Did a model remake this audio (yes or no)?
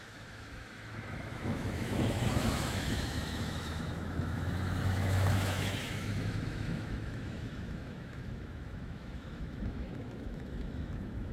yes